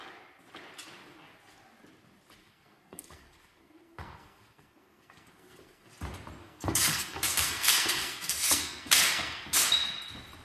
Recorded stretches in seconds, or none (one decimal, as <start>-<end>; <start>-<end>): 0.0-2.4; 5.9-6.4; 9.7-10.4

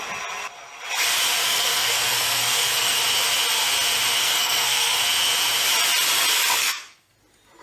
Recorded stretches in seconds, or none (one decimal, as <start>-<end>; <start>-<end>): 0.0-1.4; 3.0-4.2; 5.0-6.6; 7.1-7.6